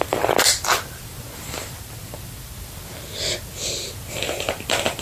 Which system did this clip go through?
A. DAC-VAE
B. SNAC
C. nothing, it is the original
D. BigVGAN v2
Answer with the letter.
D